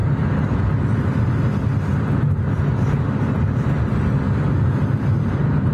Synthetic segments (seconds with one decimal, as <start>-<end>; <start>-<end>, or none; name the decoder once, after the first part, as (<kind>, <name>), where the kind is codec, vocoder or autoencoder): none